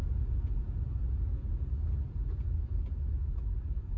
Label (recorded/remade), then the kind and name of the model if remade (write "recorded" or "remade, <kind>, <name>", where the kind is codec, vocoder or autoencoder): remade, vocoder, Vocos